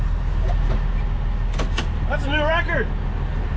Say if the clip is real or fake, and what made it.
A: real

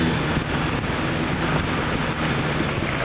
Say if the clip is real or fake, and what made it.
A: real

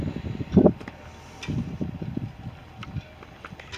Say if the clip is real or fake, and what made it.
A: real